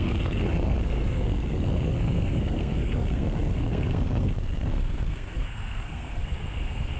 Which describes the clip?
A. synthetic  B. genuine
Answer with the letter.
A